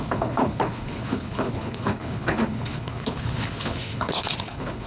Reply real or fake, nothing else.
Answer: fake